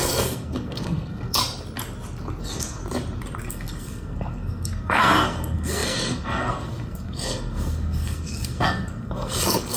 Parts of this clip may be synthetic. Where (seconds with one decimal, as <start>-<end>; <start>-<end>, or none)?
0.0-1.4; 2.4-2.8; 3.5-9.8